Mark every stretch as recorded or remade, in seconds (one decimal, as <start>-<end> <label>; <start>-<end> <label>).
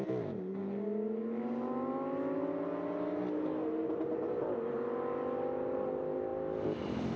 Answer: 0.0-7.2 recorded